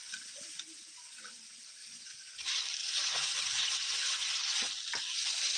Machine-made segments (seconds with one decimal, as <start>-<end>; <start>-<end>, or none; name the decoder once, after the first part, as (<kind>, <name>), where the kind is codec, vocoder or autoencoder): 1.8-2.4 (vocoder, Vocos); 2.8-4.7